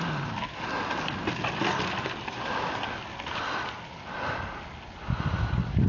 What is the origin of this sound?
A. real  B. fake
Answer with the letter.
A